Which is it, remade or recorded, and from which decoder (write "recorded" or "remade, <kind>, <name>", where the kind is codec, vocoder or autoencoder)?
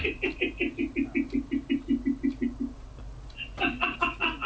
recorded